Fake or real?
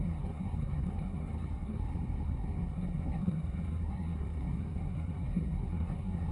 fake